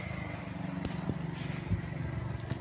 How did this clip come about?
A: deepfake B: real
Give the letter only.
B